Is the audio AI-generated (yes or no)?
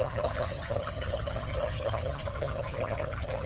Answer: yes